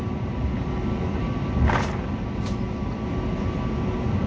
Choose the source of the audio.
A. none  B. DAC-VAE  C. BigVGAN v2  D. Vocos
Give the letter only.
A